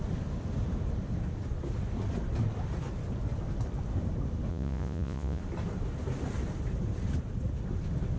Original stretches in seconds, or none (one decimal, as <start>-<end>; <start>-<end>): 0.0-4.5; 5.4-8.2